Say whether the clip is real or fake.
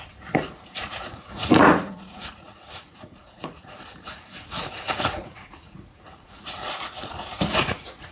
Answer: fake